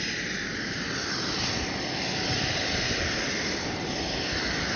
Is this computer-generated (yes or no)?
no